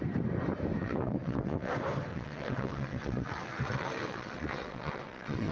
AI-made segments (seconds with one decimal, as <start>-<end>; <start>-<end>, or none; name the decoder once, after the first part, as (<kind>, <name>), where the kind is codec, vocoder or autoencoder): 0.8-1.7 (vocoder, WaveNeXt); 2.1-5.5